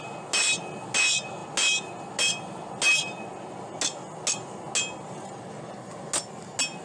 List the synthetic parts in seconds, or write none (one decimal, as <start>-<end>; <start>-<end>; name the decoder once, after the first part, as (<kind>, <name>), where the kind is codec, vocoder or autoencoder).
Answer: none